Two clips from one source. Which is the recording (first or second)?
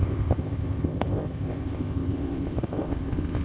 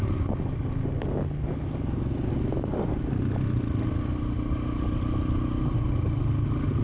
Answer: second